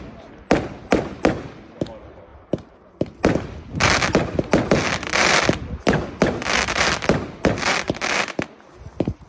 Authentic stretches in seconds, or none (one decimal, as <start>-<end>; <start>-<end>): 0.0-9.3